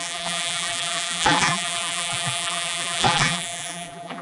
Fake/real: fake